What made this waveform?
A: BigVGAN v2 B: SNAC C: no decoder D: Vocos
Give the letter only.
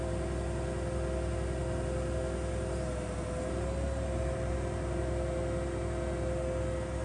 C